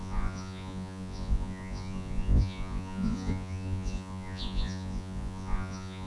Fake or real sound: fake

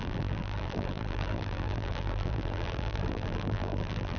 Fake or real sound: fake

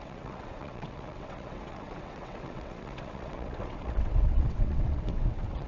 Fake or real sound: fake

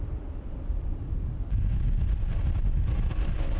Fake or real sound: real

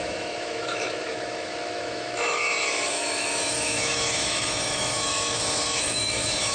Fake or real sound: fake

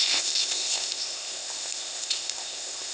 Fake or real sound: fake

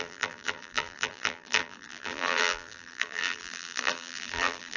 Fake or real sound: fake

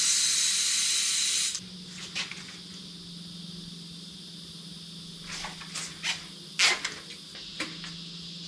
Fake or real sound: real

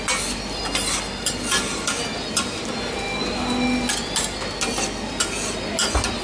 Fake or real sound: real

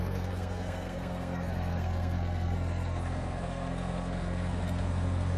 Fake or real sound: fake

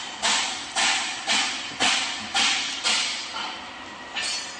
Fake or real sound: real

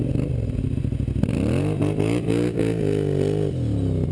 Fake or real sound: real